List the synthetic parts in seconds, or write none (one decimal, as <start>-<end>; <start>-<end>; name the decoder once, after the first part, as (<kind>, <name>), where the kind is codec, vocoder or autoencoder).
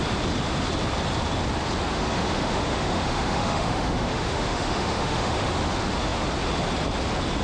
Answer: 1.9-5.6 (autoencoder, DAC-VAE)